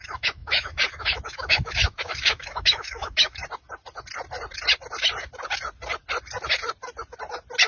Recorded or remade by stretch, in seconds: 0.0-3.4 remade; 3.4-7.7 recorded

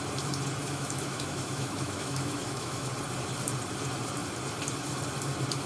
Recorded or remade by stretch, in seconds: 0.0-0.6 recorded; 0.6-2.9 remade; 2.9-5.7 recorded

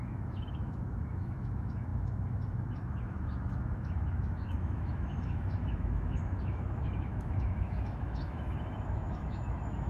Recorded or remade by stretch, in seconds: 0.0-9.9 remade

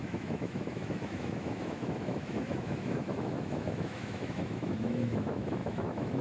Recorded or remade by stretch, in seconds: 0.0-6.2 remade

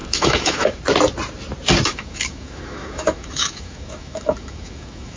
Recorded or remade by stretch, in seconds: 0.0-0.8 remade; 0.8-1.9 recorded; 1.9-5.2 remade

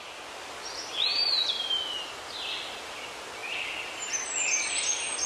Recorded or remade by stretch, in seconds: 0.0-5.3 recorded